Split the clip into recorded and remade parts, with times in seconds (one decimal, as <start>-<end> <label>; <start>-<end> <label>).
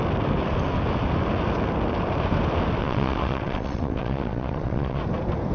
0.0-2.8 recorded; 2.8-5.0 remade; 5.0-5.5 recorded